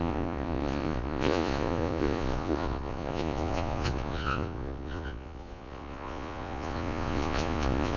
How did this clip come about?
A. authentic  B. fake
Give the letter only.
B